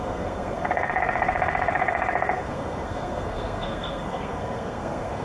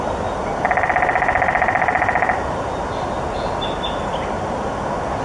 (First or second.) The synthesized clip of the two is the first